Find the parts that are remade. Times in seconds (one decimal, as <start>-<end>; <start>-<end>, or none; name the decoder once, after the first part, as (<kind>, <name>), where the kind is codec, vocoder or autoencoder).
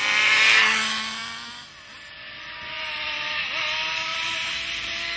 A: 4.1-5.2 (vocoder, BigVGAN v2)